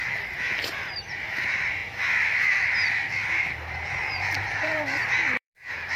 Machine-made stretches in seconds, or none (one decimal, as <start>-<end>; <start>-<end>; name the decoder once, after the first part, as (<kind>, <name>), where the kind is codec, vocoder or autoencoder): 0.0-1.8 (vocoder, BigVGAN v2); 3.3-6.0